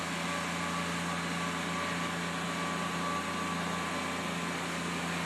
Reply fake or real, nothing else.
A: real